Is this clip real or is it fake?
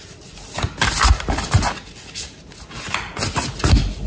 real